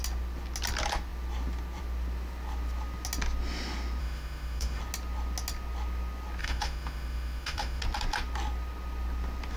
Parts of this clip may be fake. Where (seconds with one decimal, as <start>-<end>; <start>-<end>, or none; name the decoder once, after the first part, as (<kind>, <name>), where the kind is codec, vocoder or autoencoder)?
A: 4.0-4.8 (autoencoder, DAC-VAE); 6.4-7.8